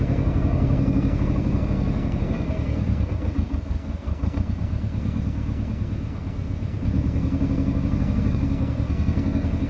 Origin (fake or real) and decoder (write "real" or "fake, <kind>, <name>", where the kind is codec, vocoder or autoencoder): fake, codec, SNAC